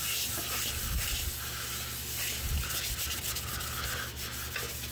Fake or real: real